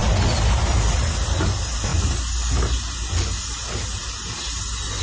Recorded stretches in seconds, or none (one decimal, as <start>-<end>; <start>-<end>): 0.0-5.0